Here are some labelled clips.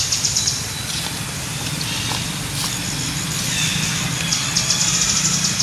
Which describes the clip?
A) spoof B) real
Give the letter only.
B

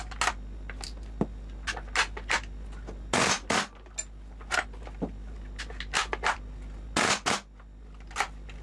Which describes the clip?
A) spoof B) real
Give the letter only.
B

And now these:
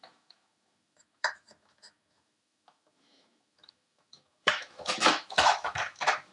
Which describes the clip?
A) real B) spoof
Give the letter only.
B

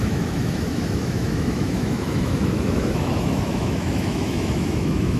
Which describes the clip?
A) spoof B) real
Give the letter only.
A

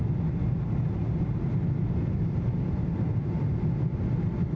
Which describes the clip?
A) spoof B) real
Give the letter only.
B